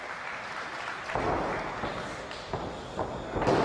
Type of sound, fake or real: real